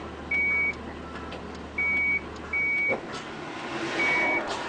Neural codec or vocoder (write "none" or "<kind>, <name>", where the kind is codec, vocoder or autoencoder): none